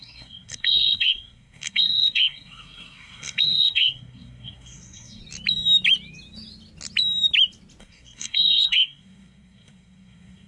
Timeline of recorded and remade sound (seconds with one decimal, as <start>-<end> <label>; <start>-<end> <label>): 0.0-5.2 remade; 5.2-7.8 recorded; 7.8-10.5 remade